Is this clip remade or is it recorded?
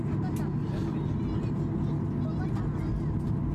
recorded